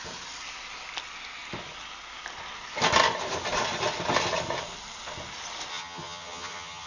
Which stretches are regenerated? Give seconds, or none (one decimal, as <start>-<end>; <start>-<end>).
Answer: 5.7-6.9